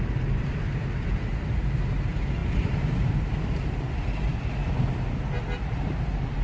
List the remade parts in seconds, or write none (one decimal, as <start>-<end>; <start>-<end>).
0.0-4.3; 5.6-6.4